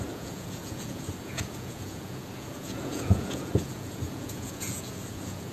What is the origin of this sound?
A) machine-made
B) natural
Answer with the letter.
A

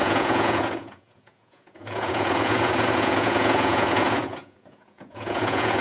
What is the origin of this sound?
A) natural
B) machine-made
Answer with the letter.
B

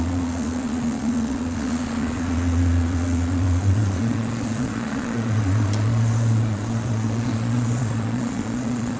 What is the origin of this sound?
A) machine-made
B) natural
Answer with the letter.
A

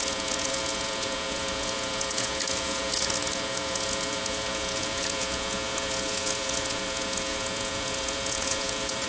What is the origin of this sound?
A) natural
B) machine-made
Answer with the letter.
B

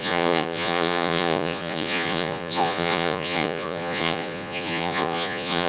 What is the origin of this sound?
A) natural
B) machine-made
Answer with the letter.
B